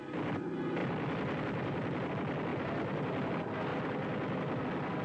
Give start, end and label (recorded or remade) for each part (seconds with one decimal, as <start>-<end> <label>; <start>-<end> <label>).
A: 0.0-0.8 recorded; 0.8-2.1 remade; 2.1-2.5 recorded; 2.5-3.3 remade; 3.3-3.7 recorded; 3.7-4.6 remade; 4.6-5.0 recorded